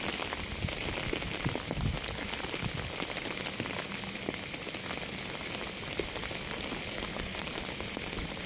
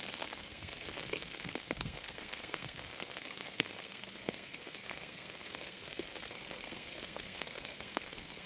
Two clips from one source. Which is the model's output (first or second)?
second